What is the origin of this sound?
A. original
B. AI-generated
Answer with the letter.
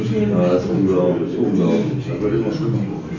A